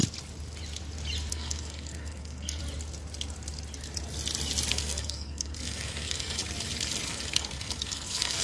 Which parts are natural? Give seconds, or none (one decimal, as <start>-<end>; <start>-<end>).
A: 0.0-1.3; 2.6-4.7; 6.4-7.1